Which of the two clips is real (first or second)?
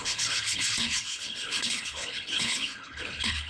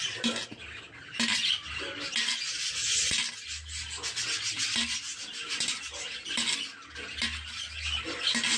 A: second